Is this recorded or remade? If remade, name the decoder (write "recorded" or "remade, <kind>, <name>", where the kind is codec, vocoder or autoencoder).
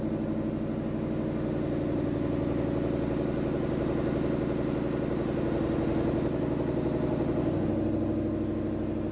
recorded